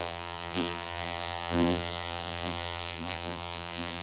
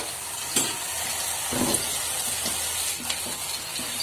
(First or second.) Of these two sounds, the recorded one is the second